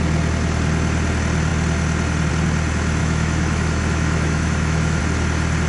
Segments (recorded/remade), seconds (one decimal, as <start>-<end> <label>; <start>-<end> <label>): 0.0-3.0 recorded; 3.0-5.0 remade; 5.0-5.7 recorded